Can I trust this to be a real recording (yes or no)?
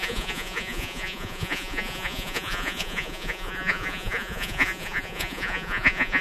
no